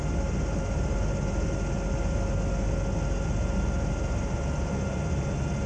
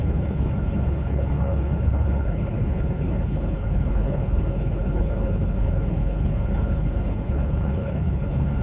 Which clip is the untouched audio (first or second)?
first